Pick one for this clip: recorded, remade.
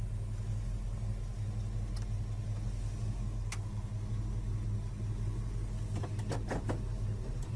recorded